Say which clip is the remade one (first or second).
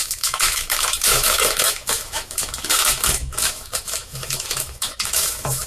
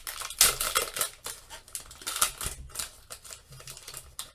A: first